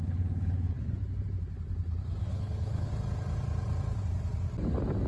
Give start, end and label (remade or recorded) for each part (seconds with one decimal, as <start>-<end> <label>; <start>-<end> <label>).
0.0-0.9 remade; 0.9-2.2 recorded; 2.2-2.9 remade; 2.9-5.1 recorded

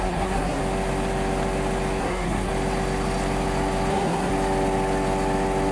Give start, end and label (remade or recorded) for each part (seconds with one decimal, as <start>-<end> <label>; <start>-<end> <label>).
0.0-0.6 remade; 0.6-2.0 recorded; 2.0-2.5 remade; 2.5-3.9 recorded; 3.9-4.3 remade; 4.3-5.7 recorded

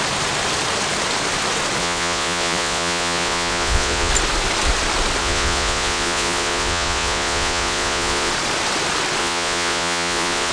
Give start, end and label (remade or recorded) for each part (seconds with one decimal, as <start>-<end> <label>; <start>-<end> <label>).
0.0-1.8 recorded; 1.8-4.1 remade; 4.1-5.2 recorded; 5.2-8.3 remade; 8.3-9.2 recorded; 9.2-10.5 remade

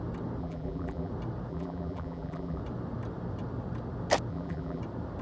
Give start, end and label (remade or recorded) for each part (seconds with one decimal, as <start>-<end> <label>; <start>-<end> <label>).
0.0-0.4 recorded; 0.4-1.1 remade; 1.1-1.5 recorded; 1.5-2.6 remade; 2.6-4.3 recorded; 4.3-4.8 remade; 4.8-5.2 recorded

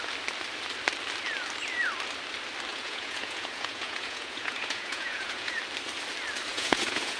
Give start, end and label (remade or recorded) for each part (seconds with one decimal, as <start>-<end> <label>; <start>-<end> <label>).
0.0-2.7 recorded; 2.7-5.6 remade; 5.6-6.5 recorded; 6.5-7.2 remade